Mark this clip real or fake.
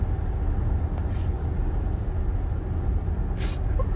real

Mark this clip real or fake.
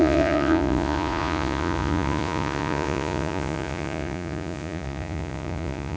fake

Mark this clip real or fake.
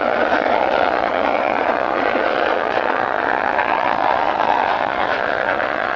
fake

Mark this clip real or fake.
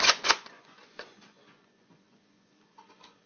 fake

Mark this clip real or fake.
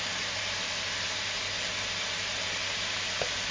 real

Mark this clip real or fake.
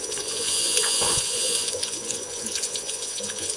fake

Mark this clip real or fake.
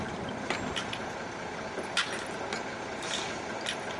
real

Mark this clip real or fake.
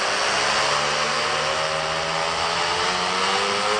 real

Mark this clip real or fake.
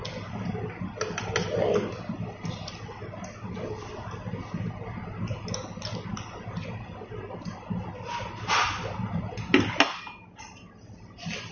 real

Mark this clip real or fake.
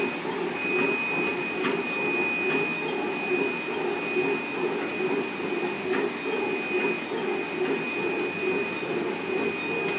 real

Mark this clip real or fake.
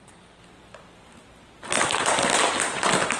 real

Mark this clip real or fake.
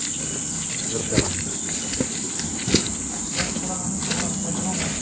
real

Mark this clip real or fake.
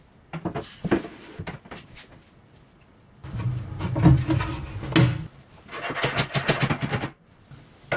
real